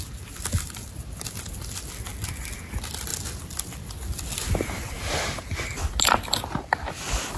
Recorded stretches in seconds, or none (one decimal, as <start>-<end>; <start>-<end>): 0.0-7.4

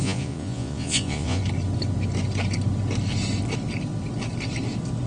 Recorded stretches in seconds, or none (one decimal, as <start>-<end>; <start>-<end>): 1.4-5.1

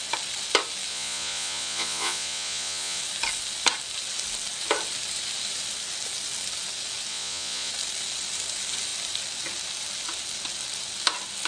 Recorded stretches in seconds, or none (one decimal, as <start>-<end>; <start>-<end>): 0.0-0.9; 3.0-7.1; 7.7-11.5

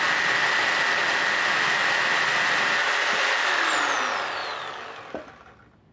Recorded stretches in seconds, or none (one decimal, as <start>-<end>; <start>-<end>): 0.0-5.9

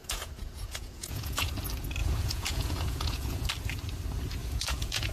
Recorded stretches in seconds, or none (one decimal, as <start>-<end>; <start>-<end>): 1.5-2.0; 3.5-4.4